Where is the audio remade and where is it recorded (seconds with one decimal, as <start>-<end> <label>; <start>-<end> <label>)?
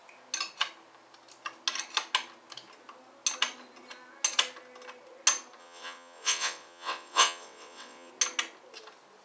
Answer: 0.0-5.6 recorded; 5.6-8.1 remade; 8.1-9.2 recorded